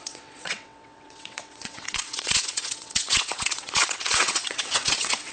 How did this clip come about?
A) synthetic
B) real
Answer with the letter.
A